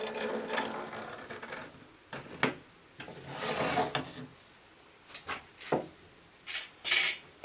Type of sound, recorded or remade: recorded